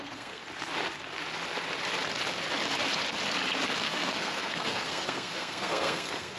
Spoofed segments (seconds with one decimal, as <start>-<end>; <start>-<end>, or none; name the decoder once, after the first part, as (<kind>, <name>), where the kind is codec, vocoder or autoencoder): 0.0-0.4 (codec, SNAC); 3.7-6.4